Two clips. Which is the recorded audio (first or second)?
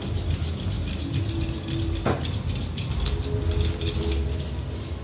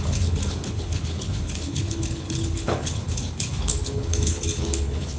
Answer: first